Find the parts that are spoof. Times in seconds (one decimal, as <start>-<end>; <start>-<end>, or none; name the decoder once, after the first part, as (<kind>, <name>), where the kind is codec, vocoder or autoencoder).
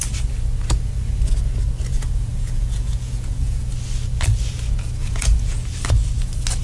1.9-3.7 (vocoder, Vocos); 5.0-5.7